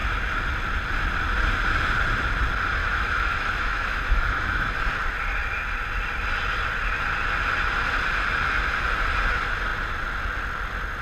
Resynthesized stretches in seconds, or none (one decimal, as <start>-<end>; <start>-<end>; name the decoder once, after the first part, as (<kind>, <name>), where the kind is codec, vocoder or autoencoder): 2.8-4.8 (autoencoder, DAC-VAE)